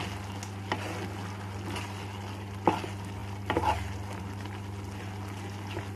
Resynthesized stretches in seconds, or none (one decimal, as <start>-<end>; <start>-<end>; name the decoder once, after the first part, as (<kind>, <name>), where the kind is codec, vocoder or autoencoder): none